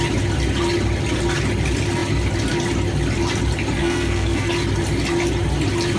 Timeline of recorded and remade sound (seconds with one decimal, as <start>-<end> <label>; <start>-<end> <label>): 0.0-3.8 recorded; 3.8-4.5 remade; 4.5-6.0 recorded